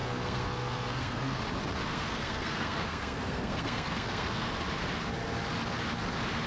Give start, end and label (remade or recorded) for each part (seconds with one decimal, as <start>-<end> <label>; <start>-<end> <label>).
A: 0.0-1.4 remade; 1.4-1.9 recorded; 1.9-4.5 remade; 4.5-6.5 recorded